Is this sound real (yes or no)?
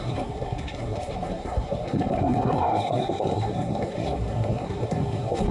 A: no